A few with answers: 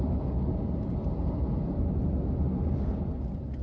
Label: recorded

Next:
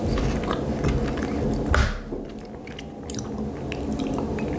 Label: recorded